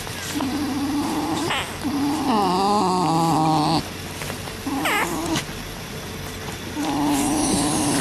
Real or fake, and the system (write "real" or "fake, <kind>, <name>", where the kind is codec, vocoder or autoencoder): real